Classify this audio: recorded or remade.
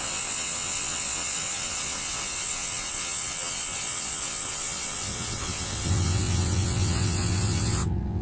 remade